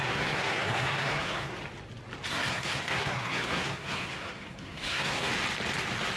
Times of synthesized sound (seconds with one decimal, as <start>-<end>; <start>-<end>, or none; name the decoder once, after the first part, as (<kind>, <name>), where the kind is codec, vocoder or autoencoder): 0.0-1.5 (codec, SNAC); 2.3-5.3